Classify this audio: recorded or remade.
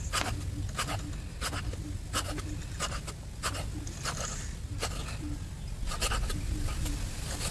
recorded